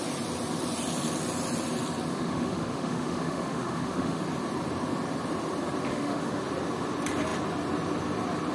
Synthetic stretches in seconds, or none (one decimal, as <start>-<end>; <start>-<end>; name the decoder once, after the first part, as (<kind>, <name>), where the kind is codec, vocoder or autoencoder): 2.1-4.2 (autoencoder, DAC-VAE); 5.9-6.4